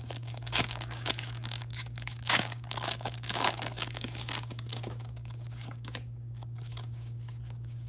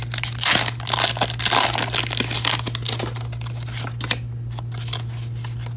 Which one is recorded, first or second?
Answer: second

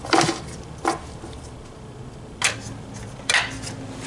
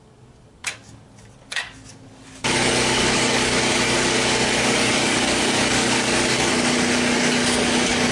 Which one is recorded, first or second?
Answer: first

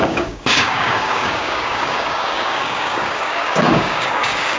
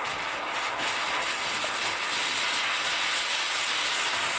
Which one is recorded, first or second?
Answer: second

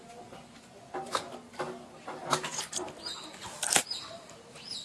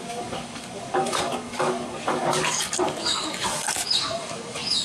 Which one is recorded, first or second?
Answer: first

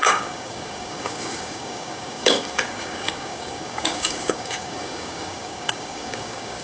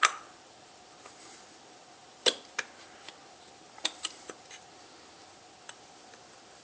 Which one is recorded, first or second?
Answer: second